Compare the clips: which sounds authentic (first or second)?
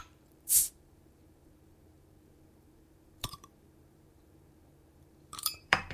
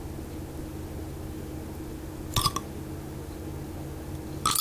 second